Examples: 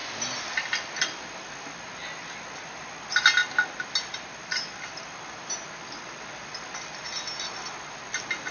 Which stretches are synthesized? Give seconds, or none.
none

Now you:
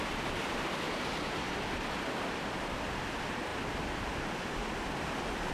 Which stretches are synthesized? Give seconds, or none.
0.0-5.5 (vocoder, BigVGAN v2)

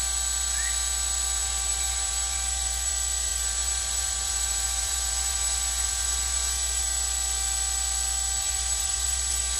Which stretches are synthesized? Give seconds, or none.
1.4-2.9 (vocoder, Vocos); 3.3-6.8; 8.4-9.6

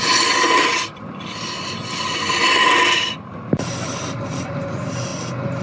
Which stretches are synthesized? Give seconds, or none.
none

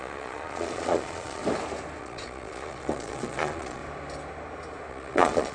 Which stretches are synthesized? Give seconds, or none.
0.0-1.4 (vocoder, Vocos); 2.0-3.8; 4.9-5.5